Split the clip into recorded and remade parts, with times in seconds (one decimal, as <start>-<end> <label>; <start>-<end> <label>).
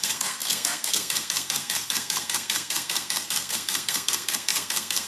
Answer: 0.0-5.1 remade